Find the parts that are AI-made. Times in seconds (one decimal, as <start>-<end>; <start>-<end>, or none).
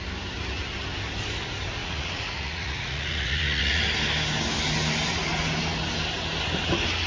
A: 1.8-3.8